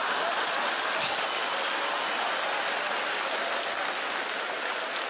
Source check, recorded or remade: recorded